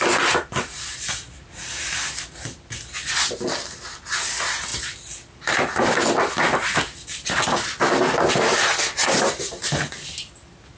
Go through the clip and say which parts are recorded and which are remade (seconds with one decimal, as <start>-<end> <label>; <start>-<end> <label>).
0.0-10.8 recorded